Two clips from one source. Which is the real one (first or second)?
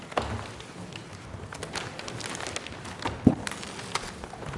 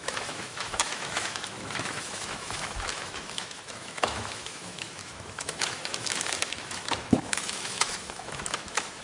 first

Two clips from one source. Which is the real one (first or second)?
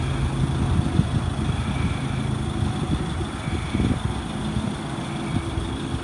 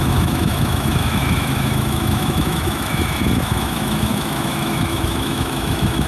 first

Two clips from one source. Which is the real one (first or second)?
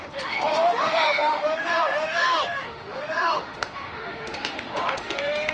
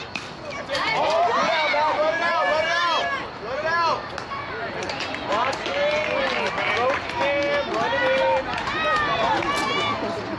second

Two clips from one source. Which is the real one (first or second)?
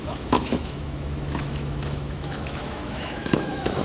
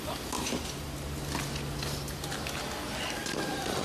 second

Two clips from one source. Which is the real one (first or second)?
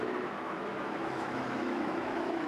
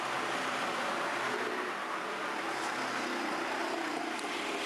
second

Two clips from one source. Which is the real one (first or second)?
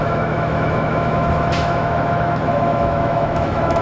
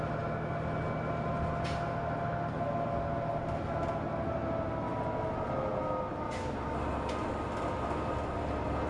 second